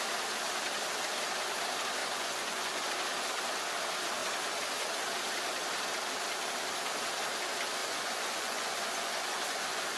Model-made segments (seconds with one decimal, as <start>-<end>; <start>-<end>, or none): 2.0-2.9; 7.8-10.0